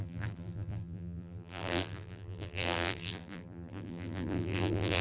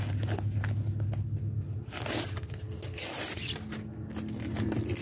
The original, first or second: second